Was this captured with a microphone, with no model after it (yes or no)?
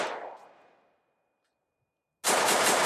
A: yes